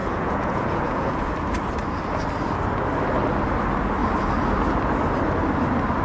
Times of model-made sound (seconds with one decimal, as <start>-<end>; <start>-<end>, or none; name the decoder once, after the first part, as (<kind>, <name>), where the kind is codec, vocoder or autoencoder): 0.0-1.2 (vocoder, Vocos)